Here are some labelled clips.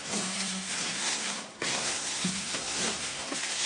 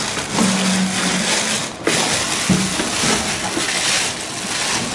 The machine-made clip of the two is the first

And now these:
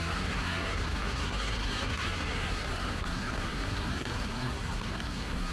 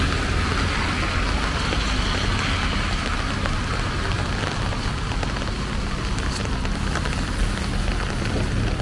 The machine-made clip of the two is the first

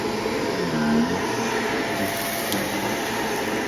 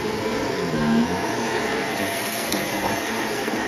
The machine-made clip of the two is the second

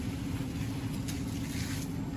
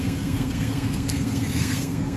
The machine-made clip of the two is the second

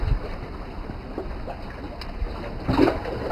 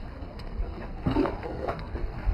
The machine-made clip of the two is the second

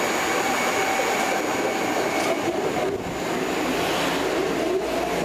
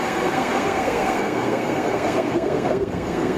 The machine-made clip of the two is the second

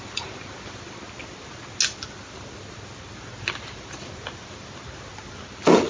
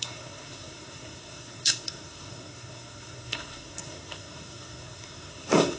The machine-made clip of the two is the second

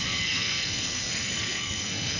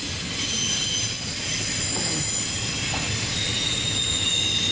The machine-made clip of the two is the first